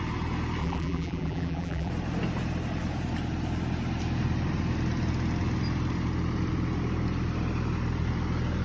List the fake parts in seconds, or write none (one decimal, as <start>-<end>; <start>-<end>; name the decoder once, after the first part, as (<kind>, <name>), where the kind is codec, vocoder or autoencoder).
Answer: 0.6-1.9 (vocoder, BigVGAN v2)